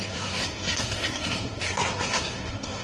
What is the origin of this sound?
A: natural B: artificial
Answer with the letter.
B